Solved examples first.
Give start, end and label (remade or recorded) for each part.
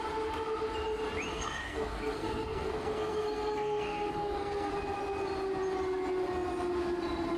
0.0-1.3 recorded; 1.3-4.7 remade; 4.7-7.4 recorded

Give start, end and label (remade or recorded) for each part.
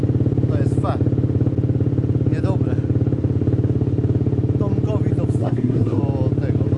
0.0-5.4 recorded; 5.4-6.0 remade; 6.0-6.8 recorded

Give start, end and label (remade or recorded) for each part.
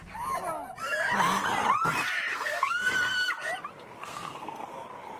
0.0-2.3 recorded; 2.3-2.9 remade; 2.9-4.0 recorded; 4.0-4.7 remade; 4.7-5.2 recorded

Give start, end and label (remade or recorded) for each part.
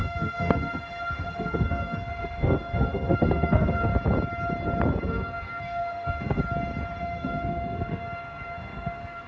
0.0-3.9 remade; 3.9-5.0 recorded; 5.0-6.4 remade; 6.4-7.0 recorded; 7.0-9.3 remade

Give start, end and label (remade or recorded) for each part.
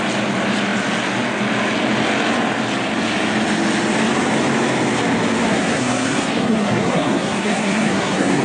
0.0-5.4 recorded; 5.4-8.4 remade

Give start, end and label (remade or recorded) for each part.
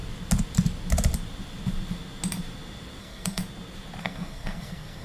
0.0-3.0 recorded; 3.0-3.4 remade; 3.4-4.0 recorded; 4.0-5.0 remade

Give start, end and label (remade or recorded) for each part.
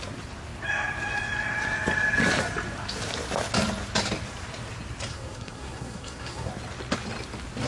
0.0-5.1 recorded; 5.1-6.5 remade; 6.5-7.7 recorded